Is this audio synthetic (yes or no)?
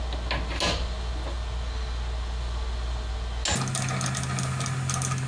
no